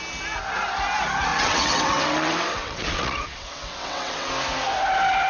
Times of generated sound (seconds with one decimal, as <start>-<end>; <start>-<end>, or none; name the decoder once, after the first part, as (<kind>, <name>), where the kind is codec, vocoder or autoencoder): 1.3-4.3 (vocoder, WaveNeXt)

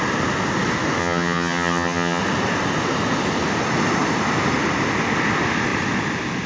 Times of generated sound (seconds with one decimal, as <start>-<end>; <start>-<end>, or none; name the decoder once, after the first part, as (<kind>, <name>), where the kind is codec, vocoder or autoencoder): 1.0-2.2 (vocoder, HiFi-GAN)

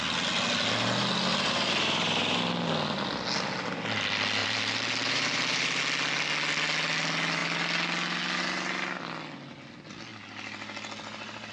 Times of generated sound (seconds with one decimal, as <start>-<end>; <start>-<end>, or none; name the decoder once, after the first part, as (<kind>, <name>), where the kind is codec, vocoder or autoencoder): 1.3-2.4 (vocoder, BigVGAN v2); 4.4-5.8

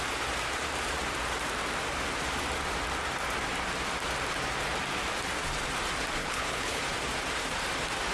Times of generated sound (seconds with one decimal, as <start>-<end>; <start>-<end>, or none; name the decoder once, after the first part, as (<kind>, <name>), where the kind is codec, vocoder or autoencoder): 6.2-6.8 (codec, HILCodec)

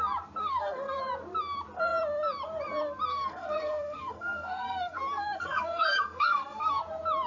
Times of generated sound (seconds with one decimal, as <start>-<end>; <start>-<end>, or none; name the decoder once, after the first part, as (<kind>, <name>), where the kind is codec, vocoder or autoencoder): 0.4-1.0 (codec, SNAC); 3.1-6.8

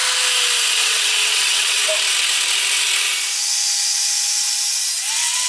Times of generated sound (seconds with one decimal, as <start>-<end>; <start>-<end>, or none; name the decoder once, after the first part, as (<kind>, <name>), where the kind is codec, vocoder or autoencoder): 0.7-1.8 (vocoder, WaveNeXt); 5.1-5.5